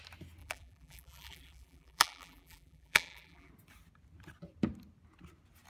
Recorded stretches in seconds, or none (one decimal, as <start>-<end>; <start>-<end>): 0.0-0.4; 3.5-5.7